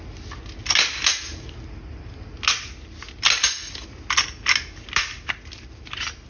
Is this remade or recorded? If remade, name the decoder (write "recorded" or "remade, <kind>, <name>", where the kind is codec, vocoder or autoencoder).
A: recorded